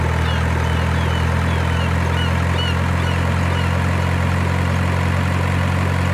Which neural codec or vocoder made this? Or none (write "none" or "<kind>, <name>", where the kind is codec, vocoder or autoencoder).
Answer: none